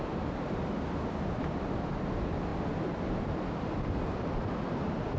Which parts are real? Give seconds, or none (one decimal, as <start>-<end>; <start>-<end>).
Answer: 0.0-5.2